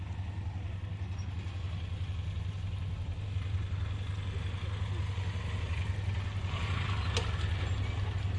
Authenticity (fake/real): real